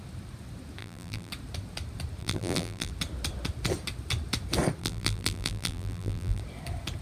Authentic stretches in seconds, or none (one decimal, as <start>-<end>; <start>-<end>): 0.0-0.8; 1.3-2.2; 2.9-4.8; 6.4-7.0